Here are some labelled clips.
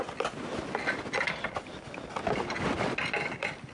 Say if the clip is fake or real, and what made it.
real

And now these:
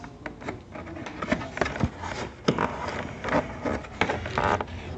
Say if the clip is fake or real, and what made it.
real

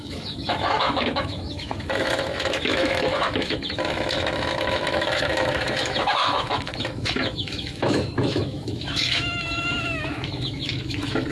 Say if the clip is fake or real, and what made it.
fake, autoencoder, DAC-VAE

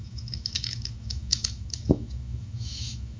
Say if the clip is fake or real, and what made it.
fake, autoencoder, DAC-VAE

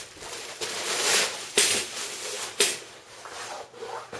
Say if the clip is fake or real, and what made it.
real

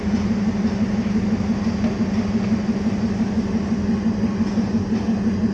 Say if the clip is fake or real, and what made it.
real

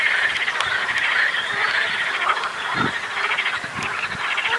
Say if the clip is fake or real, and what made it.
real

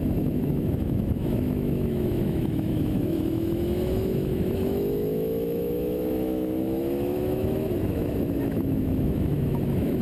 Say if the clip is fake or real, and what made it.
fake, autoencoder, DAC-VAE